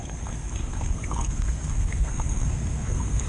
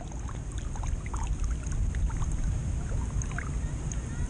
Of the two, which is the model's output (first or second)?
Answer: first